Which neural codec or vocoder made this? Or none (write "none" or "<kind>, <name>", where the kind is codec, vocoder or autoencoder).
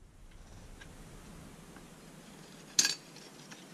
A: none